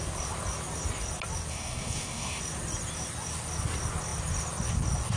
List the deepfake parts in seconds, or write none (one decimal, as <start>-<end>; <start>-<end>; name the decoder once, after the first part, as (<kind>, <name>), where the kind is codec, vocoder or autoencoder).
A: 1.5-2.4 (codec, SNAC)